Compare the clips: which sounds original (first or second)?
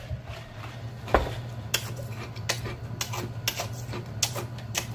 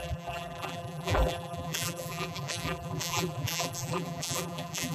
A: first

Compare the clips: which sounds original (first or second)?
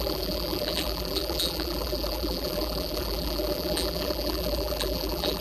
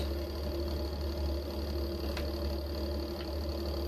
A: second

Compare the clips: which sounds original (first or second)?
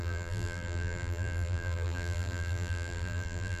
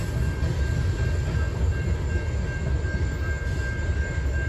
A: second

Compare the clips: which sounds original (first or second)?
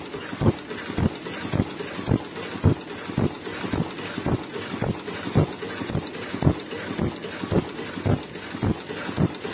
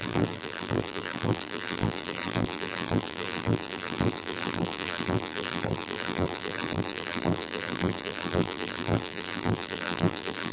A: first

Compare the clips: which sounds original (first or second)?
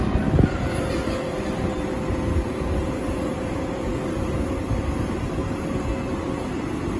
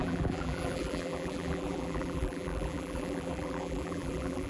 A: first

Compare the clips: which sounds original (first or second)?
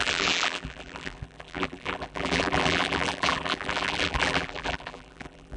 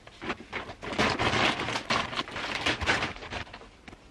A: second